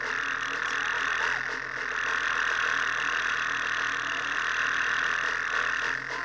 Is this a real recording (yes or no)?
yes